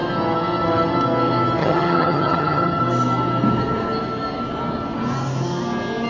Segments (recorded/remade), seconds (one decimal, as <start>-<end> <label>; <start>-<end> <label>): 0.0-1.6 recorded; 1.6-2.8 remade; 2.8-6.1 recorded